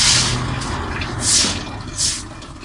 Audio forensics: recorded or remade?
recorded